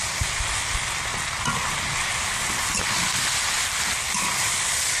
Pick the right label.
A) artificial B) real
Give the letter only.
B